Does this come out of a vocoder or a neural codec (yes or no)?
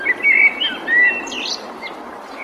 no